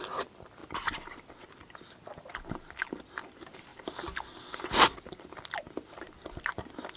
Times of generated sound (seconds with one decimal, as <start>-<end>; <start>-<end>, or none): none